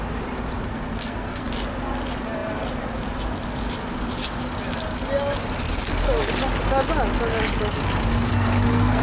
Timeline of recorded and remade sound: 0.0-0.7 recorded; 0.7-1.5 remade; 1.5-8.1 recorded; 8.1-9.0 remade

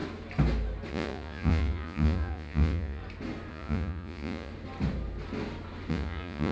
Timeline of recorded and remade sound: 0.0-0.9 recorded; 0.9-3.0 remade; 3.0-3.5 recorded; 3.5-4.5 remade; 4.5-5.9 recorded; 5.9-6.5 remade

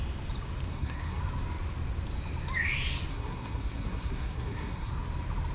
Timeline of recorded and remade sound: 0.0-0.7 recorded; 0.7-1.2 remade; 1.2-3.1 recorded; 3.1-4.9 remade; 4.9-5.5 recorded